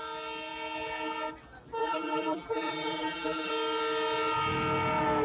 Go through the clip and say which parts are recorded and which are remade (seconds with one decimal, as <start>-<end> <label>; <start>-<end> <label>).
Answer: 0.0-1.8 recorded; 1.8-3.5 remade; 3.5-5.2 recorded